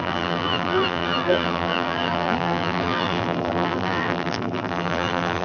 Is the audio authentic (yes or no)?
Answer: no